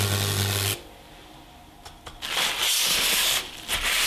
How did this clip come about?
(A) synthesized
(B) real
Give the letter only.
B